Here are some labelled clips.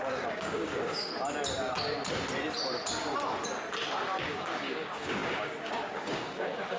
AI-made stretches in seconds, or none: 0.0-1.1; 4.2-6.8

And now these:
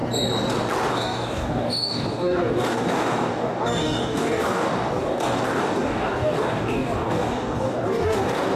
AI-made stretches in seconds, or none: 0.9-8.6

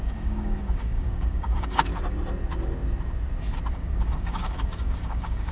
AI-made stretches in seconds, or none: 0.0-1.9; 3.7-5.5